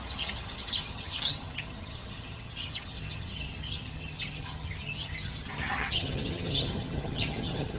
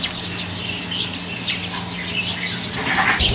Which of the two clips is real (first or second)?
second